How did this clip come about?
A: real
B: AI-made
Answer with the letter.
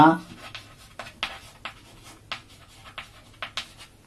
A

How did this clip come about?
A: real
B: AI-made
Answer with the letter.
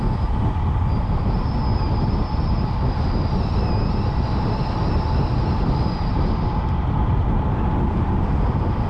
A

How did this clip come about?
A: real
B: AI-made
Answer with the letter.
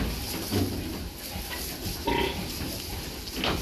A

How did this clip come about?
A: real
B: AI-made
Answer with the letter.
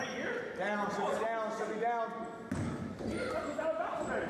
A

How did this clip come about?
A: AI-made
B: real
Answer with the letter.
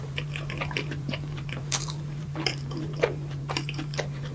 A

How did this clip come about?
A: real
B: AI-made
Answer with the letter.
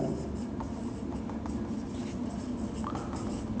A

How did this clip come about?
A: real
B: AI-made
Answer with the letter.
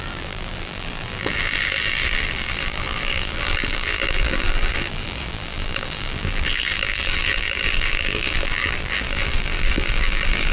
B